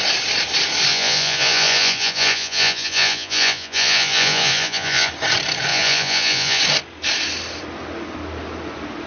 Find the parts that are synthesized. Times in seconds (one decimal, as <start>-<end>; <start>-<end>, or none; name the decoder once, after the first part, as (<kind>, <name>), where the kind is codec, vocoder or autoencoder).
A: 0.9-5.1 (vocoder, Vocos); 5.7-6.6